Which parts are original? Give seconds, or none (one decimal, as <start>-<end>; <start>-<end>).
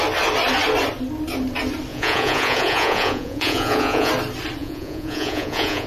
0.0-1.9; 4.1-4.6